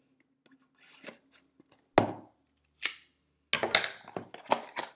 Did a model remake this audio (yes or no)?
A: no